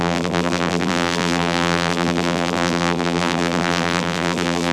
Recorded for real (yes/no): no